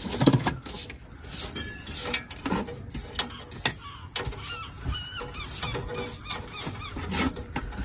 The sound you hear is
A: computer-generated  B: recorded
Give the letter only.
B